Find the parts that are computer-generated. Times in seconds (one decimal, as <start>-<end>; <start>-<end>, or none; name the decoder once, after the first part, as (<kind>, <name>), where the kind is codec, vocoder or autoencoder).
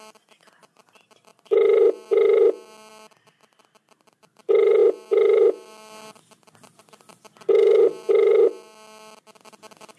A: none